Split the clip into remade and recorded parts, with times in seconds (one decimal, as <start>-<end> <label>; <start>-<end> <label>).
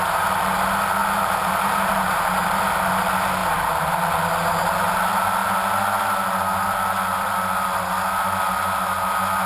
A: 0.0-1.0 recorded; 1.0-1.9 remade; 1.9-9.5 recorded